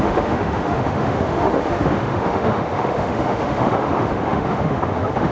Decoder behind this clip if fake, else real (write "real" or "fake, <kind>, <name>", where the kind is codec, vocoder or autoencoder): fake, autoencoder, DAC-VAE